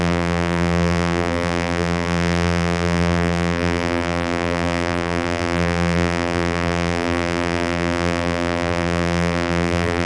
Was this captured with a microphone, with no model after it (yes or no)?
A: no